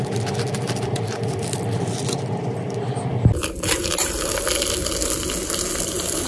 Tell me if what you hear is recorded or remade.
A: recorded